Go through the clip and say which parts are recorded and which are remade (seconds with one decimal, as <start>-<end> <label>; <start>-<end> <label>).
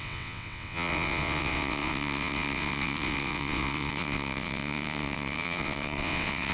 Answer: 0.0-6.5 remade